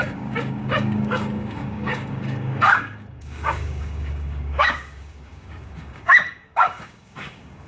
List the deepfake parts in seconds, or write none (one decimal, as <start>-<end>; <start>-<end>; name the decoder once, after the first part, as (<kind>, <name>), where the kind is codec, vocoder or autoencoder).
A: 0.0-7.7 (codec, DAC)